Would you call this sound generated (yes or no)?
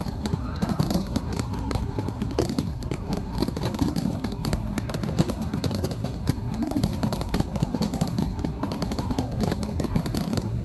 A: yes